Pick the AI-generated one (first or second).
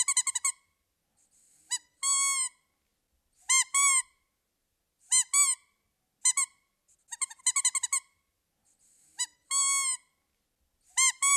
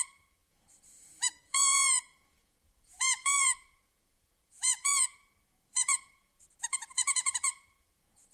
second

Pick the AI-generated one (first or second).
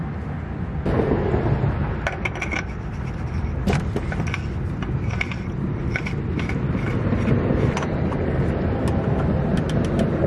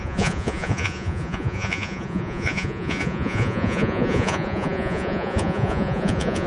second